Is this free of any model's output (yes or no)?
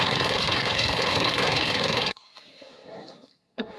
no